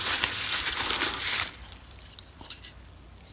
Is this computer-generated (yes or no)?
yes